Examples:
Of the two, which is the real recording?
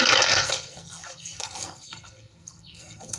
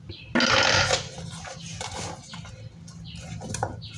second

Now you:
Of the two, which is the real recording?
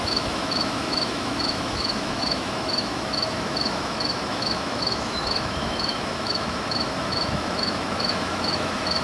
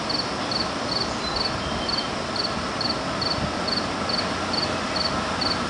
second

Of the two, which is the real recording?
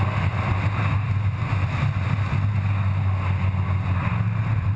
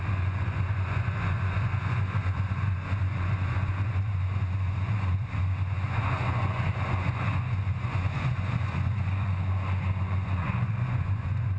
first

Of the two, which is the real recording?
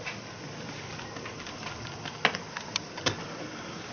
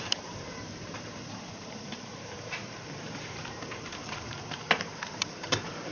first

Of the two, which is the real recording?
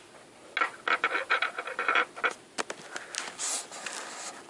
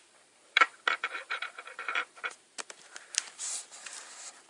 first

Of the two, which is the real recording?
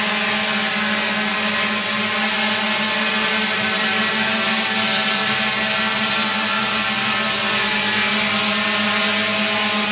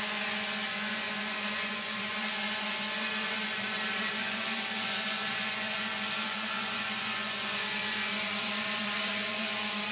first